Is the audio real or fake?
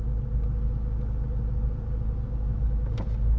real